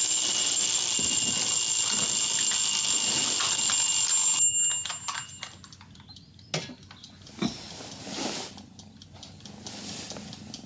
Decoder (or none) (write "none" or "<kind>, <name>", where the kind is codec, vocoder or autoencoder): none